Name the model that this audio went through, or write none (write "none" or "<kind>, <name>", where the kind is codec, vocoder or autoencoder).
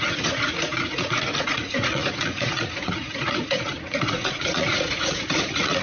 vocoder, Vocos